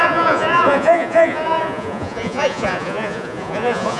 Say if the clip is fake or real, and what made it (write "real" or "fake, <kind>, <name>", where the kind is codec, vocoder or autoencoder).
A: fake, vocoder, Vocos